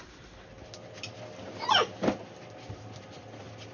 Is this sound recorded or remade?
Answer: recorded